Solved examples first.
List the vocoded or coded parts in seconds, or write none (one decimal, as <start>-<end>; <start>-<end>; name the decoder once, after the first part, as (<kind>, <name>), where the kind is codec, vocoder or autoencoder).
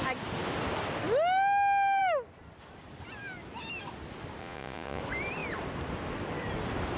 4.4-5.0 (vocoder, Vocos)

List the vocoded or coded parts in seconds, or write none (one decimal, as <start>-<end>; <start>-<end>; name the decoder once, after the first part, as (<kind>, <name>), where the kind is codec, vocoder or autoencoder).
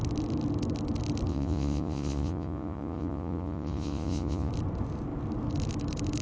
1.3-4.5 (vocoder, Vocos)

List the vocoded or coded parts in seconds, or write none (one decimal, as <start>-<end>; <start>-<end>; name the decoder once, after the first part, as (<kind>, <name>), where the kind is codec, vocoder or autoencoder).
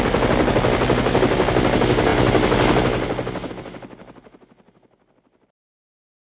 none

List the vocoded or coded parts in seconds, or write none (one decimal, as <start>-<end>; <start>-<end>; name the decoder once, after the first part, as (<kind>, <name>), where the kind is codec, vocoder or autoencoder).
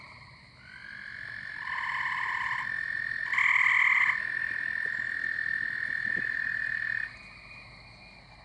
none